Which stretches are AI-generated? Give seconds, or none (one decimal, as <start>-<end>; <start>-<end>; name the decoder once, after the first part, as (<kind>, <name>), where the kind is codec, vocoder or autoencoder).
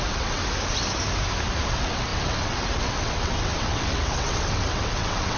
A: 0.0-0.4 (vocoder, WaveNeXt); 1.6-5.4